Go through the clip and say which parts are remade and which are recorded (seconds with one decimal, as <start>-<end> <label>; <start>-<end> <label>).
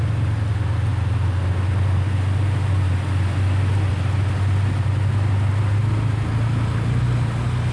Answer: 0.0-7.7 recorded